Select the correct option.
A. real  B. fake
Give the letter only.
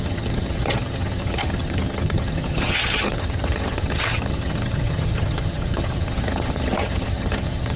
B